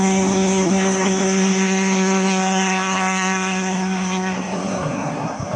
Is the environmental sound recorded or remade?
remade